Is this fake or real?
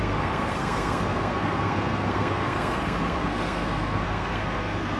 fake